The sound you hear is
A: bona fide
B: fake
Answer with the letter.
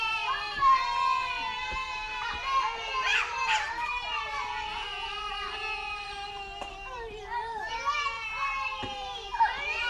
B